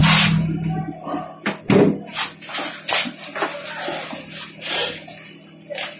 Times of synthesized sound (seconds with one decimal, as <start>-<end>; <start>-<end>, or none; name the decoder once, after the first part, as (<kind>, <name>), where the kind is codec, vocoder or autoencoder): none

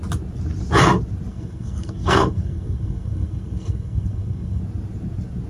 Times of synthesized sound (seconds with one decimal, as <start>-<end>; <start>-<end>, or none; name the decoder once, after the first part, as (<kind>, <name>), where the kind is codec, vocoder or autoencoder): 1.3-4.6 (codec, SNAC)

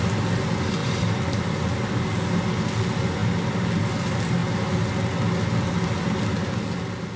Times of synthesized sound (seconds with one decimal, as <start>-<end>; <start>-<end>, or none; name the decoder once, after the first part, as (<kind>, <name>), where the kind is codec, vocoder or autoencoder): 0.8-1.6 (vocoder, BigVGAN v2); 3.2-3.9

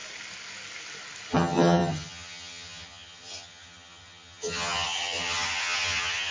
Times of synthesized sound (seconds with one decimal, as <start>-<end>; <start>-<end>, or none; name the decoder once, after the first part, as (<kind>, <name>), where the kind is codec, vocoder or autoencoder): 1.3-6.3 (vocoder, HiFi-GAN)